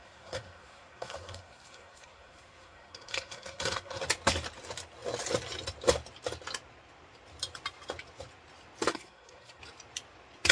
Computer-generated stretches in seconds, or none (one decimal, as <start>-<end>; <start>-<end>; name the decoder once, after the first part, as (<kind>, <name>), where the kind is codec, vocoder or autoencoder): 0.0-4.0 (codec, SNAC); 8.9-9.6